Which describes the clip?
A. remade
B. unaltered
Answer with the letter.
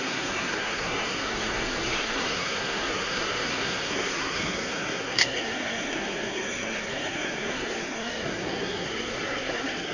A